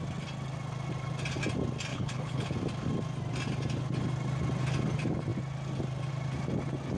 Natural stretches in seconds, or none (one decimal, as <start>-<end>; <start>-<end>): 0.0-1.9; 2.5-7.0